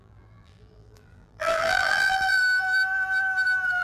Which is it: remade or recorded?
remade